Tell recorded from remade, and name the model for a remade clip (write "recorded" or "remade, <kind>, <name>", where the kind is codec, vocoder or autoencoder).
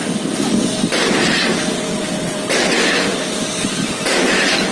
recorded